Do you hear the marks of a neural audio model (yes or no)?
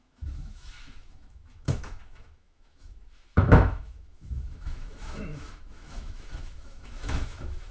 yes